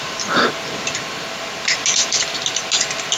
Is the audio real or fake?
real